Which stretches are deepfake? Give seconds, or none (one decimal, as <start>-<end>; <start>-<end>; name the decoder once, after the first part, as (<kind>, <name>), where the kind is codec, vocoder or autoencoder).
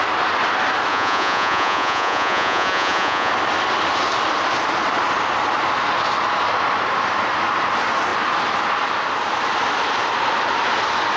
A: 0.9-3.3 (vocoder, Vocos)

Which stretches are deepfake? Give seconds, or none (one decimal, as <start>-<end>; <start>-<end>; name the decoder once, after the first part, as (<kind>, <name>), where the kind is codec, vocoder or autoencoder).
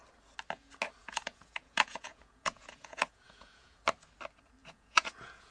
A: 1.0-3.8 (vocoder, Vocos); 4.6-5.5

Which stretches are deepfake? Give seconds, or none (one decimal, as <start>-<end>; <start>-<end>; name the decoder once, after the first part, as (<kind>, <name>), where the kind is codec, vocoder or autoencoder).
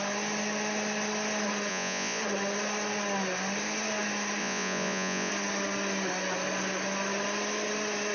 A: 1.7-2.2 (vocoder, Vocos); 4.4-5.3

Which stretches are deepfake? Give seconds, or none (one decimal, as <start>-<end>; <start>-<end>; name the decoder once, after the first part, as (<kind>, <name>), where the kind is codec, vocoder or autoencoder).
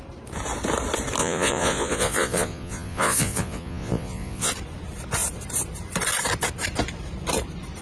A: 1.2-4.5 (vocoder, Vocos)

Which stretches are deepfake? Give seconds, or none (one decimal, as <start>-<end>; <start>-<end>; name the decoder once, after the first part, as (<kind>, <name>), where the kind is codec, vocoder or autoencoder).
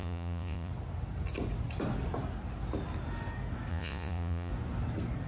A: 0.0-0.7 (vocoder, Vocos); 3.7-4.5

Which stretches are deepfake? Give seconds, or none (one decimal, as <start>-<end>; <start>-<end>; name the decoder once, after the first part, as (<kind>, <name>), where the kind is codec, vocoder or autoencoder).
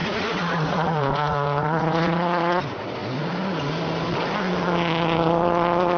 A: 0.0-2.6 (vocoder, Vocos)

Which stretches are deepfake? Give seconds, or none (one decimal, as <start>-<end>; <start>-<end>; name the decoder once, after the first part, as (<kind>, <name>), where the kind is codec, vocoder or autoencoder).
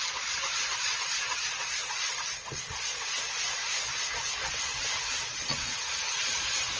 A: 0.0-3.6 (vocoder, Vocos); 5.2-6.8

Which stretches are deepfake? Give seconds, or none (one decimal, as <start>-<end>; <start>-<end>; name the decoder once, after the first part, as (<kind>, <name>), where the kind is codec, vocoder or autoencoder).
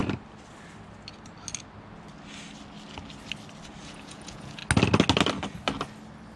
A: 3.8-4.6 (vocoder, Vocos)